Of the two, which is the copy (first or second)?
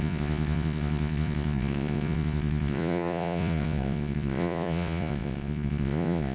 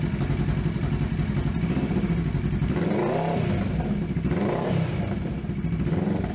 first